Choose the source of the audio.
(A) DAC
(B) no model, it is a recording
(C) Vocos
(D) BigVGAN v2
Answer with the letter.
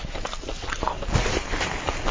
B